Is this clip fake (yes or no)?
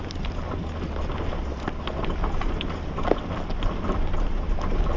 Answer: no